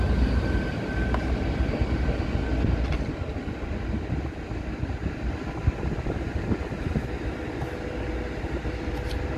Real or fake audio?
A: real